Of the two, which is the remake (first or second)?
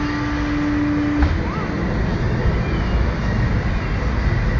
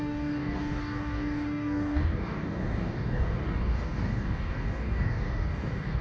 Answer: second